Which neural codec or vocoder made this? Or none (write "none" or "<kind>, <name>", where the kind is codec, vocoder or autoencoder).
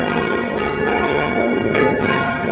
vocoder, HiFi-GAN